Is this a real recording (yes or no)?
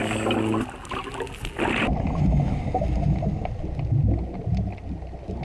yes